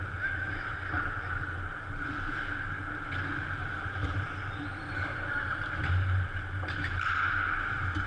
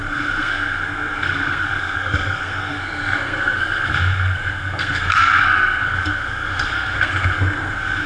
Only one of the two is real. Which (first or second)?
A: first